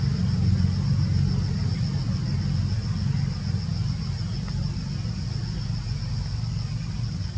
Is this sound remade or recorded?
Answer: recorded